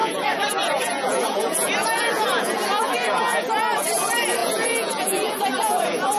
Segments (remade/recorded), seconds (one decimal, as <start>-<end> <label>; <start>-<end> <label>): 0.0-3.5 remade; 3.5-4.4 recorded; 4.4-6.2 remade